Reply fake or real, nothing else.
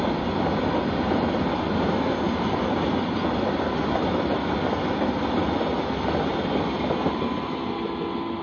real